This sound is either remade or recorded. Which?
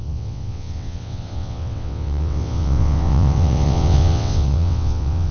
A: remade